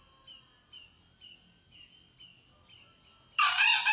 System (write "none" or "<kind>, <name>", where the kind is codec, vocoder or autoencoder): none